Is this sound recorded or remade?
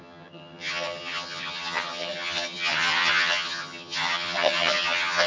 remade